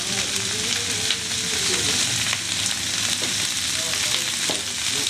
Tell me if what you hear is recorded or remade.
recorded